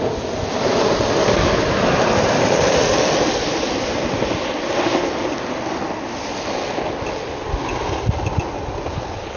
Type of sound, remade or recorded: recorded